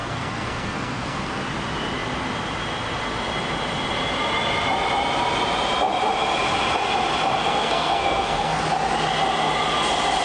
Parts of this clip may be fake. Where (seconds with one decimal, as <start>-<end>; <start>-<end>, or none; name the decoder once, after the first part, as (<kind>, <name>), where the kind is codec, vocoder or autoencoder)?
0.0-1.4 (codec, SNAC); 7.4-8.6